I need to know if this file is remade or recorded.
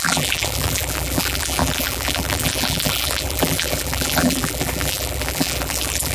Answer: remade